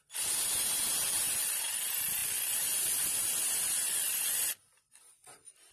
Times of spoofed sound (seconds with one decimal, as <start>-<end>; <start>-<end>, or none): none